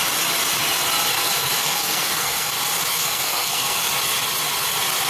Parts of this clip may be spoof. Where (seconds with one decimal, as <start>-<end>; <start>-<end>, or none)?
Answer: 1.1-2.5; 2.9-3.9